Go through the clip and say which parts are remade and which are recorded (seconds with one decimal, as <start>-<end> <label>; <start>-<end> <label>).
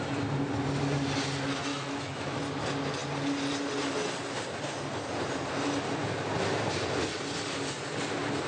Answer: 0.0-1.7 recorded; 1.7-2.4 remade; 2.4-8.5 recorded